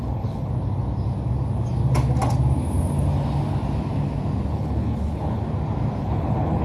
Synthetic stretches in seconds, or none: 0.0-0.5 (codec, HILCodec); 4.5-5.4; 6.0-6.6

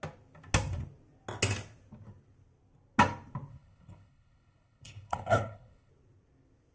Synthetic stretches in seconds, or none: 3.5-5.9 (codec, HILCodec)